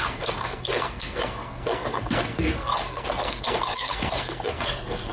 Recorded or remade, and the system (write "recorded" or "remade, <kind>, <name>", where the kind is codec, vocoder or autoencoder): remade, codec, SNAC